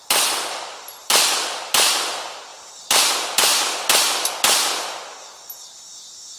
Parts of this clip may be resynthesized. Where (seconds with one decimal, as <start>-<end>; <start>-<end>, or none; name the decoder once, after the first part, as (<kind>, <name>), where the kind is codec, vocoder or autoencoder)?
1.0-1.9 (vocoder, BigVGAN v2); 2.5-3.1